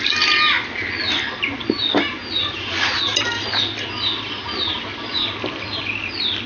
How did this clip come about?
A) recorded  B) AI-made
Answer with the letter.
A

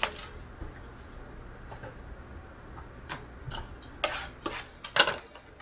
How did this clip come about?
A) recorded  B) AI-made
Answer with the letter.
A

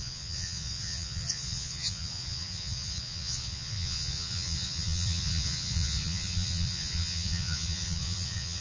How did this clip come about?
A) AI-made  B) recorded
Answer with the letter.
A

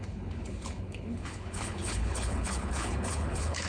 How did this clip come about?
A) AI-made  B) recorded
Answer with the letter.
A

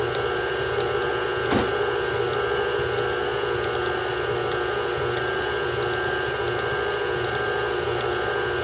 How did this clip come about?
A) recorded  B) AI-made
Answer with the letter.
A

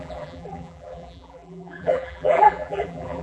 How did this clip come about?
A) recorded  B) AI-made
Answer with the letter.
B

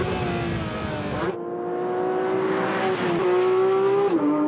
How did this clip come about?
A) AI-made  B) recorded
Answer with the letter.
B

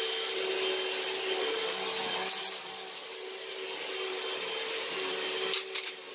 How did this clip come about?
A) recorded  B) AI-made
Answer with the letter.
A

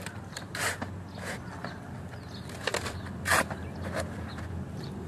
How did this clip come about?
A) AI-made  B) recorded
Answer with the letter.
B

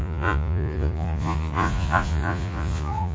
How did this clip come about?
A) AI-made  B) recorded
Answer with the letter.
A